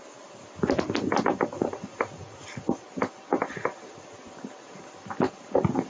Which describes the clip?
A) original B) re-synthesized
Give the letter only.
A